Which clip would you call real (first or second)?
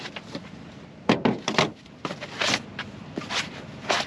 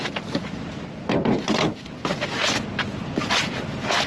second